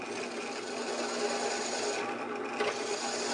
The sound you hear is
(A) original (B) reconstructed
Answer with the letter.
A